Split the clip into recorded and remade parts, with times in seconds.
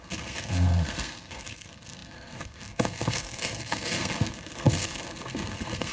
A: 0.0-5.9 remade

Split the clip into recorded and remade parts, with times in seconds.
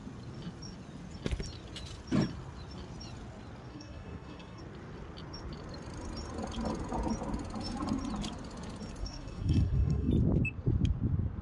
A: 0.0-3.7 recorded; 3.7-4.6 remade; 4.6-9.0 recorded; 9.0-10.1 remade; 10.1-11.4 recorded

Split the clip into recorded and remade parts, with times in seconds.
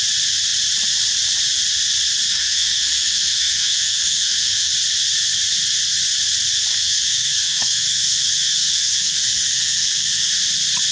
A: 0.0-2.3 recorded; 2.3-4.7 remade; 4.7-6.7 recorded; 6.7-10.3 remade; 10.3-10.9 recorded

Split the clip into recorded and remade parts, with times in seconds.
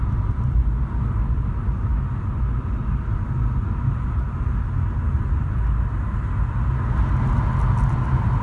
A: 0.0-8.4 recorded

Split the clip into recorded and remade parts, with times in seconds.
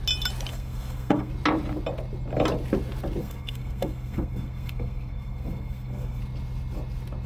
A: 0.0-0.5 recorded; 0.5-1.3 remade; 1.3-3.2 recorded; 3.2-6.2 remade; 6.2-7.3 recorded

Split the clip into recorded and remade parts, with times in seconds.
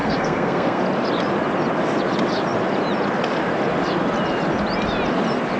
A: 0.0-0.8 remade; 0.8-5.6 recorded